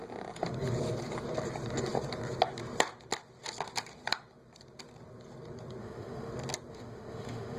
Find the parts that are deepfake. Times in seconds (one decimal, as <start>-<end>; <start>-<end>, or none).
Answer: 5.8-6.3; 6.7-7.6